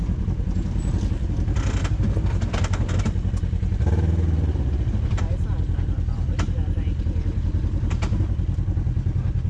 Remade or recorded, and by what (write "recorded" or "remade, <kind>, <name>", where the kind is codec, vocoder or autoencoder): recorded